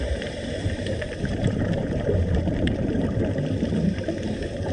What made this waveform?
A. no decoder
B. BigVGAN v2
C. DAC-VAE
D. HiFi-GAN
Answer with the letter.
B